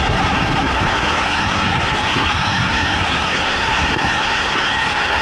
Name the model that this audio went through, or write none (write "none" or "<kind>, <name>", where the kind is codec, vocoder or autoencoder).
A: codec, SNAC